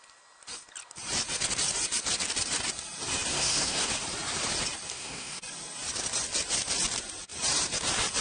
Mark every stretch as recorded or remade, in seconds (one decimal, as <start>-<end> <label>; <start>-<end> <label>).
0.0-3.3 recorded; 3.3-3.9 remade; 3.9-4.9 recorded; 4.9-5.4 remade; 5.4-8.2 recorded